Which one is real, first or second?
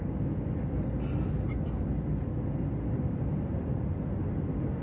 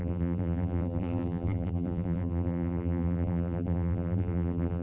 first